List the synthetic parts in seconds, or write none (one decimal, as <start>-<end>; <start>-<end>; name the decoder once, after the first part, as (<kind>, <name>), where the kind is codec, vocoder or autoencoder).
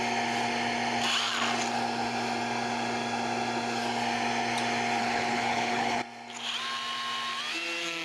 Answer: 5.0-6.0 (codec, HILCodec)